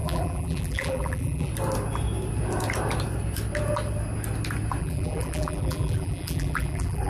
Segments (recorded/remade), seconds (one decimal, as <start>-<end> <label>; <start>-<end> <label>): 0.0-1.5 remade; 1.5-4.8 recorded; 4.8-7.1 remade